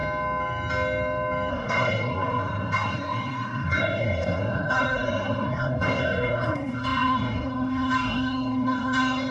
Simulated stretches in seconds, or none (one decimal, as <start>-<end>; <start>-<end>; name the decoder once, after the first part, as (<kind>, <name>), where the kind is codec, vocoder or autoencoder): 1.5-9.3 (codec, SNAC)